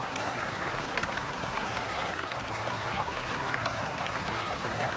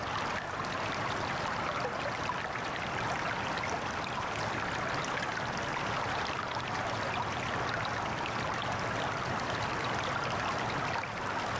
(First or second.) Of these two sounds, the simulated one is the first